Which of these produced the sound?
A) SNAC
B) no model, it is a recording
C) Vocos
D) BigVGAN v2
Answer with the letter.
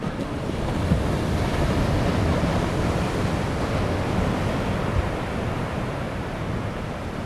B